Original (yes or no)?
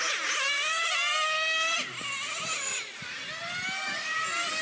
yes